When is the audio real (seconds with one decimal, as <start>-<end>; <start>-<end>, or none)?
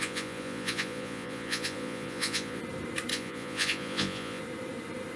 2.6-3.1; 4.4-5.2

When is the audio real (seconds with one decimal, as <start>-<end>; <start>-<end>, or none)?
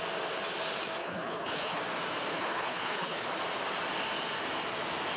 0.0-1.0; 1.8-2.3; 3.3-5.2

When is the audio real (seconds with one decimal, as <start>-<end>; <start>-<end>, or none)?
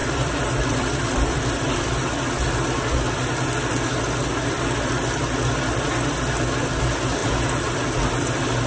1.4-8.7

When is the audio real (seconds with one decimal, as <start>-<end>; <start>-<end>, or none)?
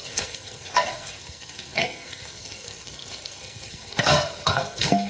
none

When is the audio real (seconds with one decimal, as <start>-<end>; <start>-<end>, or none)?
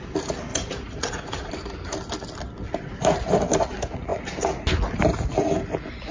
0.0-0.5; 1.5-6.1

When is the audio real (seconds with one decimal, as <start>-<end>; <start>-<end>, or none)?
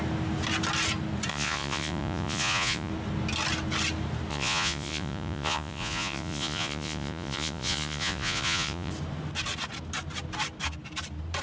0.0-1.3; 2.9-4.3; 8.9-11.4